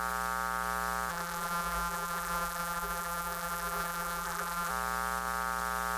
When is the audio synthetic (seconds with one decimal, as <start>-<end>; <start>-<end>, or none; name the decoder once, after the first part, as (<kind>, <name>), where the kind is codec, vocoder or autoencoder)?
1.1-4.7 (vocoder, BigVGAN v2)